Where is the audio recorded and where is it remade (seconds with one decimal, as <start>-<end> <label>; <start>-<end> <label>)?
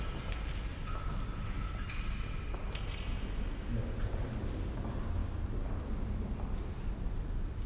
0.0-7.7 recorded